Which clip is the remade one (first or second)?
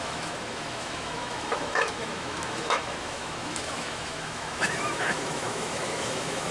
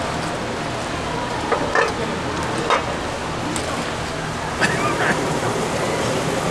first